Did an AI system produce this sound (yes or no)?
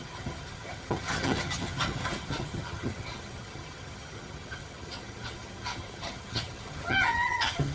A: yes